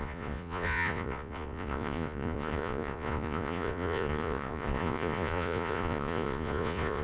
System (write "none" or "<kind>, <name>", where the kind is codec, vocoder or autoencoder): vocoder, Vocos